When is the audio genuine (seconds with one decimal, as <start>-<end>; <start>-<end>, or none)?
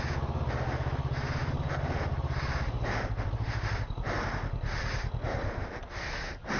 0.0-6.6